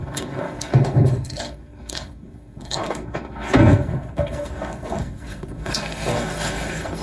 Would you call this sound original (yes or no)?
no